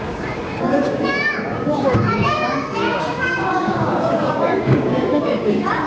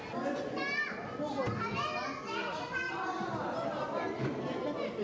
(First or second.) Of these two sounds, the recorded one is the second